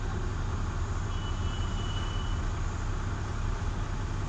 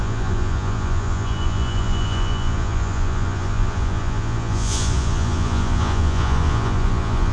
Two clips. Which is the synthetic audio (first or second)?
second